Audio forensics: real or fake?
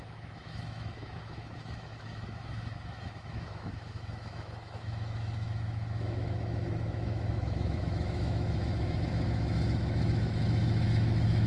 fake